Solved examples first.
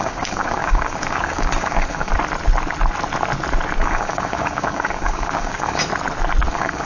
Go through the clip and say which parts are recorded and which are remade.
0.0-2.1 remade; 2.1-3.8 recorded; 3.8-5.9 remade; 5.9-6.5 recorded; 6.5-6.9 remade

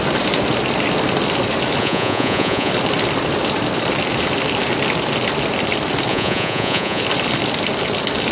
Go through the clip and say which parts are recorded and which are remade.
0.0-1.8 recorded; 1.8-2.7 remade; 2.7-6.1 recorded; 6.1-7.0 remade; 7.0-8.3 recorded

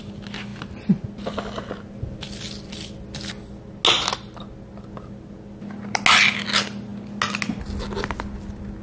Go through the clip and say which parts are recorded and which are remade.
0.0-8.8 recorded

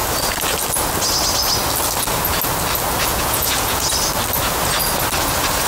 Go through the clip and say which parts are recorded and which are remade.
0.0-3.1 recorded; 3.1-3.9 remade; 3.9-5.7 recorded

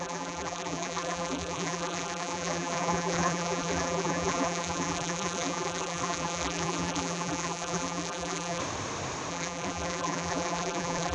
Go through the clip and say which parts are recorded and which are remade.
0.0-8.6 remade; 8.6-9.3 recorded; 9.3-11.1 remade